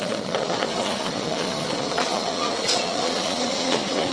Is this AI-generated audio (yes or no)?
yes